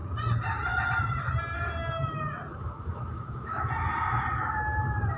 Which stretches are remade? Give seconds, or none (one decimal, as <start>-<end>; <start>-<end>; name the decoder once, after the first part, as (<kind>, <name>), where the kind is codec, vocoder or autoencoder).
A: 2.5-3.7 (autoencoder, DAC-VAE)

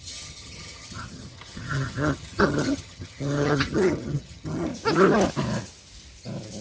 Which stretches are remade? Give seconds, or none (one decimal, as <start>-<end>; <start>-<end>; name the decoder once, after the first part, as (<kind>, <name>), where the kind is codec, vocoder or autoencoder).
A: 0.0-4.7 (vocoder, HiFi-GAN)

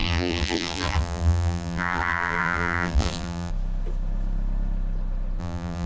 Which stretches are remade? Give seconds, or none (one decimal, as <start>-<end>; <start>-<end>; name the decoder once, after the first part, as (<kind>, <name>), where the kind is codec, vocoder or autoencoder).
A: 0.0-3.5 (vocoder, BigVGAN v2); 5.4-5.9

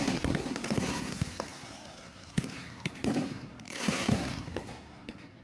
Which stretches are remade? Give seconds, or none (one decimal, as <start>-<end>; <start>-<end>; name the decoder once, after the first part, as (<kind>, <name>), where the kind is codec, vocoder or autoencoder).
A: 0.0-5.4 (codec, SNAC)

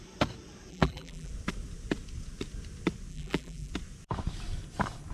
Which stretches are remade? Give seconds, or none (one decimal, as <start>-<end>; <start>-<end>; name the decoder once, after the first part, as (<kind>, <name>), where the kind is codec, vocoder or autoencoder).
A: 0.7-1.3 (vocoder, BigVGAN v2); 3.1-3.7

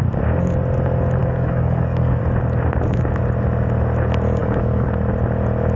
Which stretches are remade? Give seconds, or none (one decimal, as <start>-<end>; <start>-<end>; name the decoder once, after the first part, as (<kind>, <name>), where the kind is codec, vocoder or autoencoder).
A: 1.2-2.2 (codec, DAC); 4.4-4.9

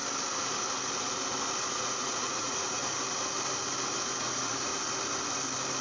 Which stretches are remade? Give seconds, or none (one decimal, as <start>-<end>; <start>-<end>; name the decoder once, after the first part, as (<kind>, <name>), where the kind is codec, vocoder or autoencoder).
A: 1.7-2.8 (vocoder, Vocos); 4.2-4.7